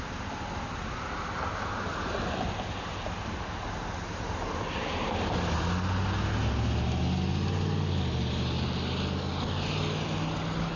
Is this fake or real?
real